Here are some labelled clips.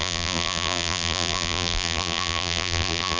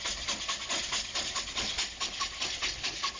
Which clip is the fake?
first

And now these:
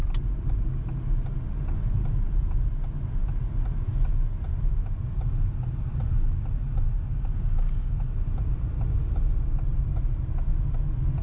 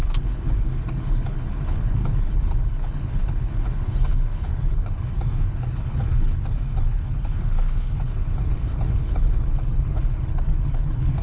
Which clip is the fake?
second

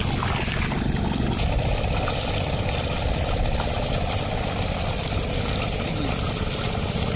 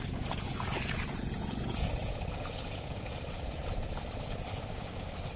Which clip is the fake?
second